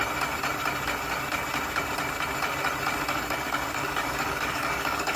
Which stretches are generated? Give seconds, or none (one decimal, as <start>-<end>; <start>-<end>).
3.1-5.2